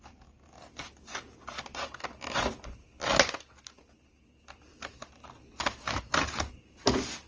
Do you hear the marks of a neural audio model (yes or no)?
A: no